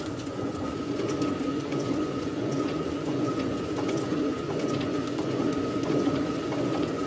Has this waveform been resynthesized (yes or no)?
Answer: yes